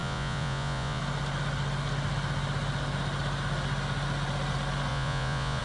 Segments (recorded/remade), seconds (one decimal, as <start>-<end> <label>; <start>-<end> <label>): 0.0-1.0 remade; 1.0-4.9 recorded; 4.9-5.6 remade